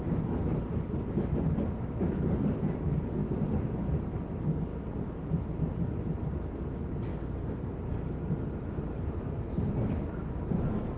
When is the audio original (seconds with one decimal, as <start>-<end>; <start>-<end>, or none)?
0.0-3.2; 3.9-4.7; 6.3-7.1; 9.1-11.0